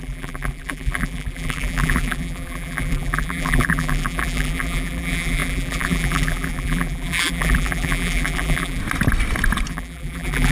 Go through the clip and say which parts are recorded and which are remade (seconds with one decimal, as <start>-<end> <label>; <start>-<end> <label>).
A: 0.0-8.8 remade; 8.8-9.7 recorded; 9.7-10.5 remade